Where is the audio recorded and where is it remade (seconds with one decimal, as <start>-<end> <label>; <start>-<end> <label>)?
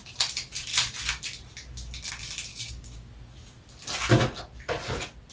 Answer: 0.0-2.5 recorded; 2.5-3.1 remade; 3.1-5.3 recorded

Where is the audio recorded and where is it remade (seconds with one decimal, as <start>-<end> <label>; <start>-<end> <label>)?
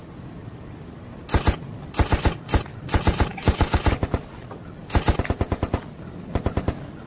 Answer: 0.0-3.3 recorded; 3.3-3.8 remade; 3.8-7.1 recorded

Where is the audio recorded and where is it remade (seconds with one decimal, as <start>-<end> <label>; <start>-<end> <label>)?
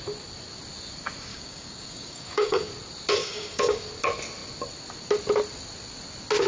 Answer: 0.0-1.3 recorded; 1.3-2.7 remade; 2.7-3.2 recorded; 3.2-3.9 remade; 3.9-6.5 recorded